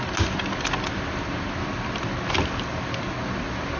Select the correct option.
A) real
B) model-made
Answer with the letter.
A